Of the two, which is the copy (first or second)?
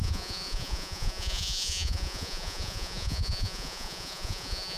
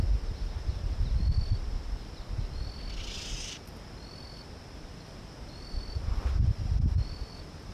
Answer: first